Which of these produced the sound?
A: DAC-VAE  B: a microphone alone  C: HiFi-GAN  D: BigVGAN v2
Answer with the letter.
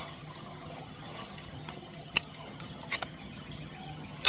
C